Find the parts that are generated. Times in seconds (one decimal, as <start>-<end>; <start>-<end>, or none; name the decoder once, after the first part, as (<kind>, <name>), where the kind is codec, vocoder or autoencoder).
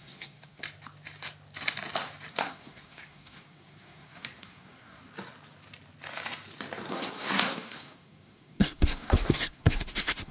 0.0-0.6 (codec, SNAC); 2.3-5.1; 6.9-10.3